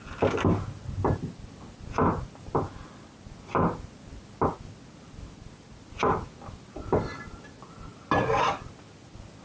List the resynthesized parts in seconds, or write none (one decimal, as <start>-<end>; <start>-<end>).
none